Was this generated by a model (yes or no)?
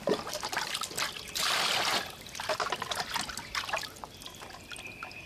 no